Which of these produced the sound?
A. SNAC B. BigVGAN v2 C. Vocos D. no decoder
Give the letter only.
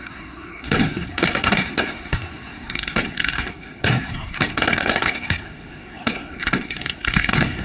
A